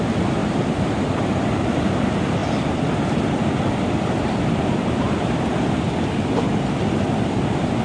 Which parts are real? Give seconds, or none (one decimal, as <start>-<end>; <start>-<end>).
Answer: 0.0-0.4; 1.4-7.8